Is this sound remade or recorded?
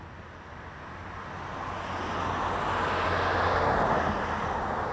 recorded